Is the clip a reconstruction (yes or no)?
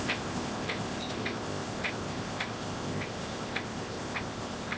yes